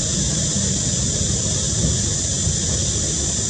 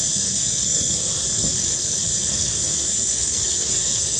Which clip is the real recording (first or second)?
first